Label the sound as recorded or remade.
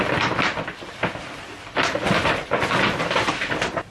recorded